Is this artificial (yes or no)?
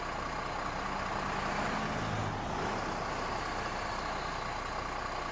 no